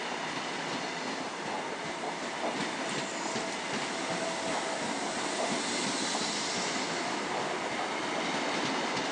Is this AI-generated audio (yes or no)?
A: no